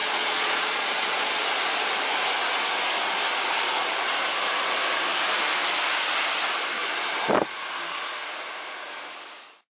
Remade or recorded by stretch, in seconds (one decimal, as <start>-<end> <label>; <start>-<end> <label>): 0.0-1.4 remade; 1.4-9.7 recorded